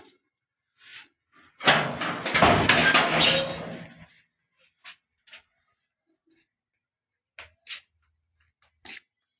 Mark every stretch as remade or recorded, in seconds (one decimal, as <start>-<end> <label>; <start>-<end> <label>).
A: 0.0-9.4 recorded